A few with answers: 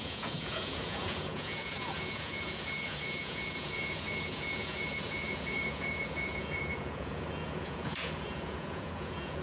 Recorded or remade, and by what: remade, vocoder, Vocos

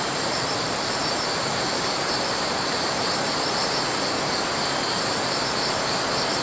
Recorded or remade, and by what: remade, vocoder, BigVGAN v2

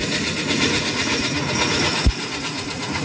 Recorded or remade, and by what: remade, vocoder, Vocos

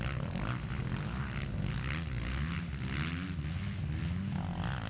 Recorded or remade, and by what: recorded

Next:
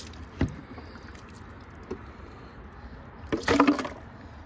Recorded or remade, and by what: recorded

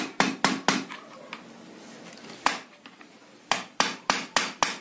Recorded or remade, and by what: recorded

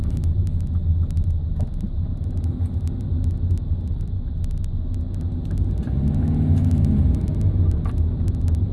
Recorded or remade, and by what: recorded